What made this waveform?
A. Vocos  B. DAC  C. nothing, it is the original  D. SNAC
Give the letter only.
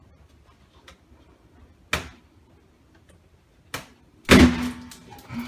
C